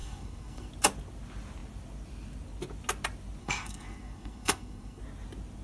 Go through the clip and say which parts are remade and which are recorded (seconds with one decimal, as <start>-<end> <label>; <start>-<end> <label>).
0.0-0.7 remade; 0.7-3.4 recorded; 3.4-5.0 remade; 5.0-5.6 recorded